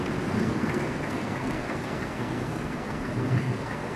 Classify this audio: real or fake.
fake